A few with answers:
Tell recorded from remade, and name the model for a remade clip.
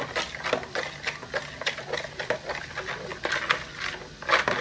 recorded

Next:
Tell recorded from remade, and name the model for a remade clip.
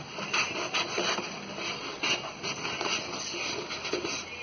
recorded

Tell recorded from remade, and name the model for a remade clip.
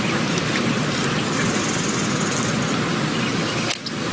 recorded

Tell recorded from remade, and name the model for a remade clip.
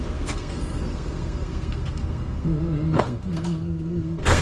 remade, codec, SNAC